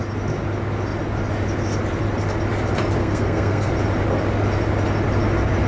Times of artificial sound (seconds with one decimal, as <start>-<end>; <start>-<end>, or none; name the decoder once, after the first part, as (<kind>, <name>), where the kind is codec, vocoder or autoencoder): 3.0-3.7 (codec, SNAC)